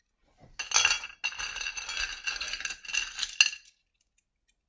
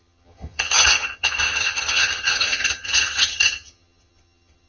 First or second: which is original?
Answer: first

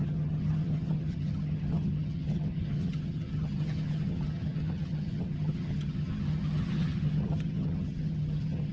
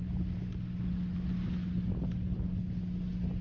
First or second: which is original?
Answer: second